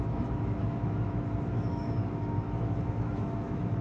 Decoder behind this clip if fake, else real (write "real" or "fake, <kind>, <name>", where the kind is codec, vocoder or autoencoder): fake, autoencoder, DAC-VAE